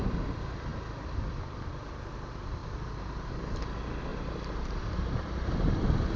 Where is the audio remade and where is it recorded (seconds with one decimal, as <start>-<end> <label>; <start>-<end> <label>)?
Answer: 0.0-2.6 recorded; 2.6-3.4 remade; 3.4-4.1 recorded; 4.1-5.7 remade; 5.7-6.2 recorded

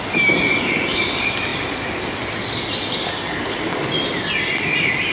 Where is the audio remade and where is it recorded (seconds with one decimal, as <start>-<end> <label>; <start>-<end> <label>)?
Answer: 0.0-1.5 remade; 1.5-4.6 recorded; 4.6-5.1 remade

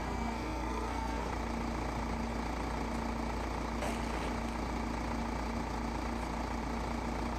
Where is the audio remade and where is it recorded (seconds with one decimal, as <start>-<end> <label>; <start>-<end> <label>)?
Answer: 0.0-1.3 remade; 1.3-7.4 recorded

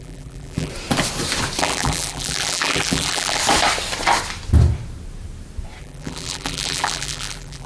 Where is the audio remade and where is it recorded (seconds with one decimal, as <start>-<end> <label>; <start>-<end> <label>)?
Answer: 0.0-0.7 remade; 0.7-1.6 recorded; 1.6-3.4 remade; 3.4-5.8 recorded; 5.8-7.7 remade